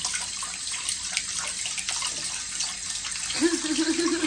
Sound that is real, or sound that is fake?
real